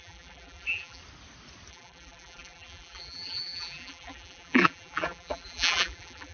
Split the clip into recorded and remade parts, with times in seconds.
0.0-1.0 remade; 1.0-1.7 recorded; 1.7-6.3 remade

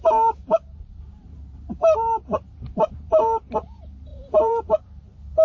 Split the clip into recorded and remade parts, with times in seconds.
0.0-0.4 recorded; 0.4-3.6 remade; 3.6-4.1 recorded; 4.1-4.8 remade; 4.8-5.4 recorded

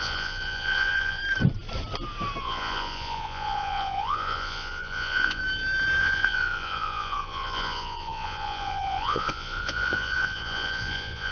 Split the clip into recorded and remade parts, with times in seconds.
0.0-1.2 remade; 1.2-2.4 recorded; 2.4-5.4 remade; 5.4-6.0 recorded; 6.0-11.3 remade

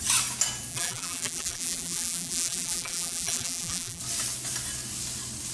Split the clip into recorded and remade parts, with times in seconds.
0.0-0.7 recorded; 0.7-4.0 remade; 4.0-5.5 recorded